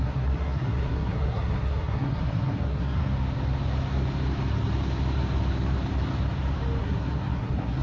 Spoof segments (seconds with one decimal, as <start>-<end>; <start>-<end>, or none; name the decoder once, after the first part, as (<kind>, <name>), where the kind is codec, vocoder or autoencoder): 0.0-3.0 (codec, SNAC); 6.8-7.8